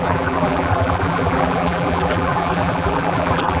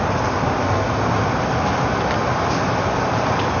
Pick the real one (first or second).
second